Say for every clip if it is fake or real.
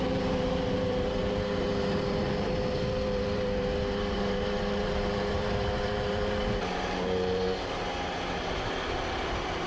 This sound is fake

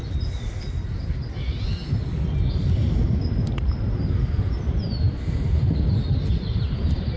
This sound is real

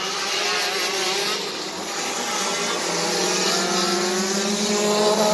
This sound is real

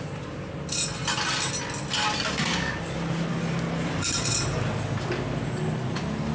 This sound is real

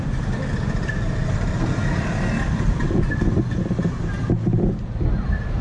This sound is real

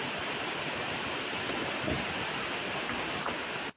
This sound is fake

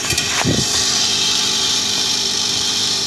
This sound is fake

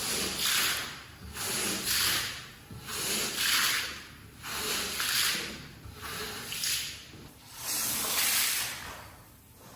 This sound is real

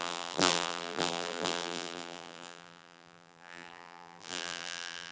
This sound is fake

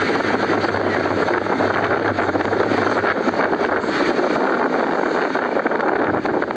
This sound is real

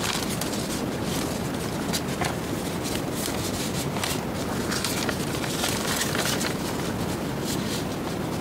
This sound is real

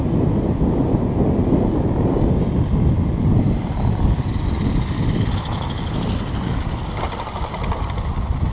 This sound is real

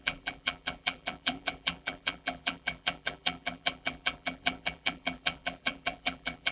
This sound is fake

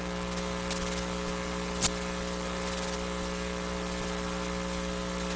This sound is real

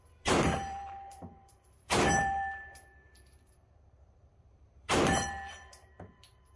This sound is fake